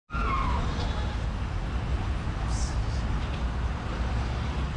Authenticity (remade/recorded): recorded